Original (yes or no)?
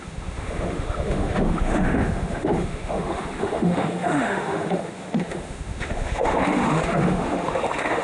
no